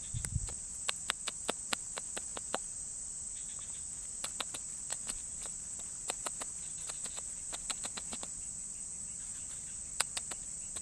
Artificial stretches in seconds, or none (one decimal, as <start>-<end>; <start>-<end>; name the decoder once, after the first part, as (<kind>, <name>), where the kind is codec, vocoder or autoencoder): none